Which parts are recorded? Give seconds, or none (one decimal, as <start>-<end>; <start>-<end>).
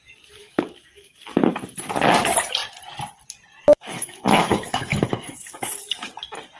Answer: 0.0-0.4; 1.2-3.7; 6.1-6.6